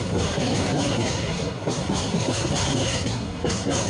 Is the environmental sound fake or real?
fake